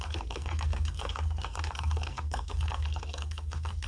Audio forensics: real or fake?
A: fake